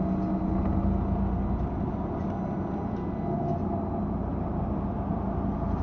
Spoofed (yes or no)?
no